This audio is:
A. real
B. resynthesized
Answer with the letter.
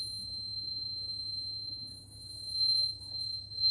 B